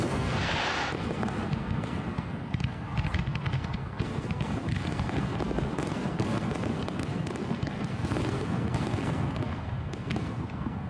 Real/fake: fake